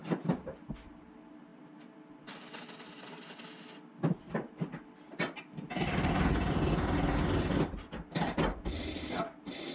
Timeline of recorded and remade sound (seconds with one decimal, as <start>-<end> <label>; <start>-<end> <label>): 0.0-9.7 recorded